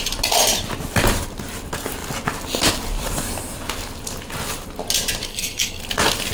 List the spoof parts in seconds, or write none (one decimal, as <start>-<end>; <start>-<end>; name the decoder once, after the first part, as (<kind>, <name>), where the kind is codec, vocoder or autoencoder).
5.3-5.8 (codec, SNAC)